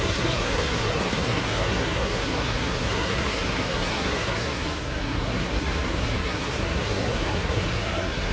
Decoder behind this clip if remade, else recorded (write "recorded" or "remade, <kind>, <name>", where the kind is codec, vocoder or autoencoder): remade, codec, SNAC